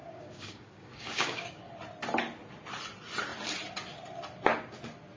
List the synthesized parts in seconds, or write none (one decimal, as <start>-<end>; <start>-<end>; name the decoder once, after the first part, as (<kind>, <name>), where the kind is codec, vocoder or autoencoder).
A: 0.0-1.6 (codec, DAC)